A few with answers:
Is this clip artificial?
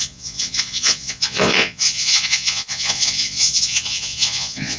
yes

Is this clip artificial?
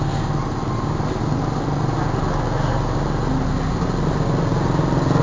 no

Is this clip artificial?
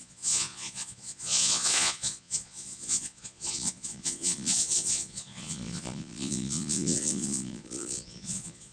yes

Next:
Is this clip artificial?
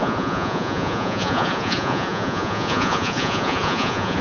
yes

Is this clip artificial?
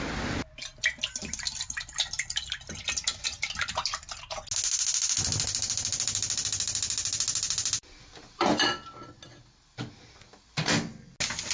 no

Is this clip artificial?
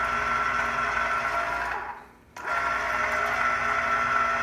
no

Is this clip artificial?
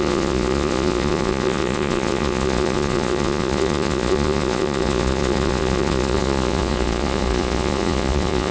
yes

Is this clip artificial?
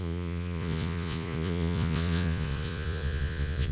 yes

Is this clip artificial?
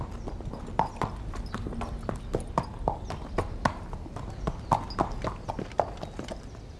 no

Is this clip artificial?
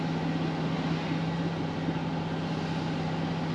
no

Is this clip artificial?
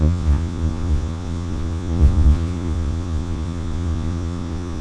yes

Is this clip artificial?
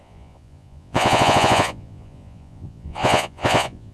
yes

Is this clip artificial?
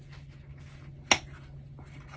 no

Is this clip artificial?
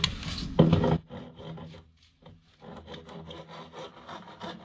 no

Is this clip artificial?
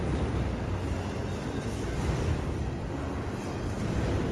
no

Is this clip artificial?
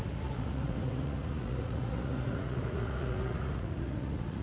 yes